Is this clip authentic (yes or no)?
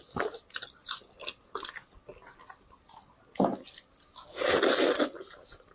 yes